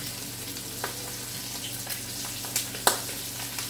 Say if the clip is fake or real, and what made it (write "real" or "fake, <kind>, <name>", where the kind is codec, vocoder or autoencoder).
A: real